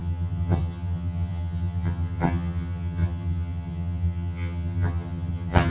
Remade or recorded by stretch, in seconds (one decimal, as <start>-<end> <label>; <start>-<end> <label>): 0.0-5.7 remade